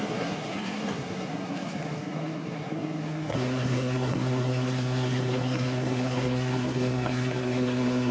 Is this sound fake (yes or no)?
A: yes